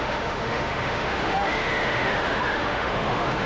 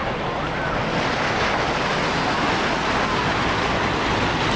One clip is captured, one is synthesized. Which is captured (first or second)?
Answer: second